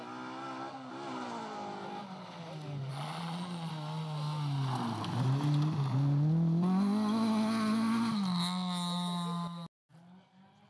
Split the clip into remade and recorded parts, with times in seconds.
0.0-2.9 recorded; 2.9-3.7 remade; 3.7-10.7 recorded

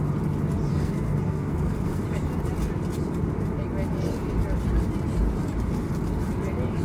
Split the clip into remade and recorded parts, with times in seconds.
0.0-0.7 recorded; 0.7-2.0 remade; 2.0-6.8 recorded

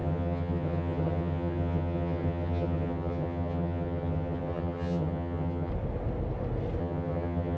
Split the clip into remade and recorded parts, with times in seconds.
0.0-5.7 remade; 5.7-6.8 recorded; 6.8-7.6 remade

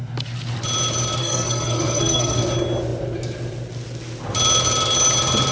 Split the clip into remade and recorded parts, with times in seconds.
0.0-1.2 recorded; 1.2-2.4 remade; 2.4-5.5 recorded

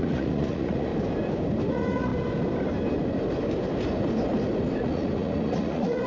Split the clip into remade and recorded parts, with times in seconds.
0.0-0.9 remade; 0.9-1.7 recorded; 1.7-2.1 remade; 2.1-4.8 recorded; 4.8-6.1 remade

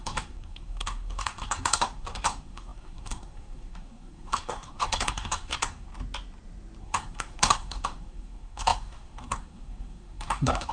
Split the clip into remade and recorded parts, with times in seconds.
0.0-5.9 remade; 5.9-6.8 recorded; 6.8-10.7 remade

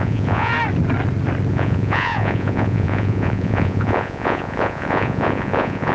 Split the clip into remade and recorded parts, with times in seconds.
0.0-0.5 remade; 0.5-1.5 recorded; 1.5-5.9 remade